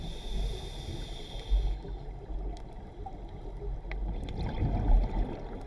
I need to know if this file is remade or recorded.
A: recorded